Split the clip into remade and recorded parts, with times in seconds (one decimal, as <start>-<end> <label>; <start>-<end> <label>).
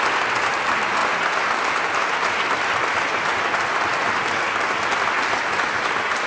0.0-6.3 recorded